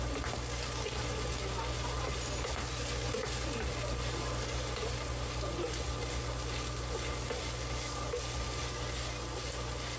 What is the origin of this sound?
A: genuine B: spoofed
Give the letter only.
A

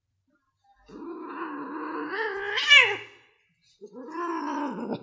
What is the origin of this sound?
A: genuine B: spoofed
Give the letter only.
A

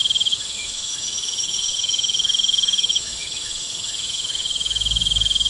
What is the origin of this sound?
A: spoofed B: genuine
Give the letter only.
A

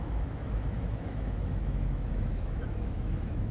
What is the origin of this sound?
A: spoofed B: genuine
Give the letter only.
A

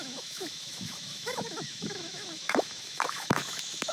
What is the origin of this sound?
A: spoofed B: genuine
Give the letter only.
A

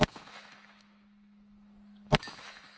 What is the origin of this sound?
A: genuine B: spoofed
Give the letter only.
B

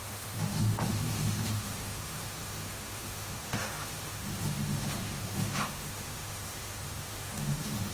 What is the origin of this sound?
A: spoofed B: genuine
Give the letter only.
A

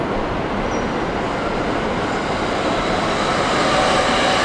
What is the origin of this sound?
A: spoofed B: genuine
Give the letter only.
B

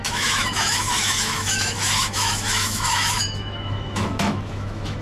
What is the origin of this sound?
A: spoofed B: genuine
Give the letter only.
A